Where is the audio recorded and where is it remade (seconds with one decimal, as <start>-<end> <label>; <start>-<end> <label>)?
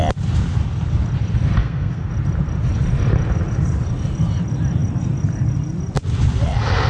0.0-1.6 recorded; 1.6-2.1 remade; 2.1-6.9 recorded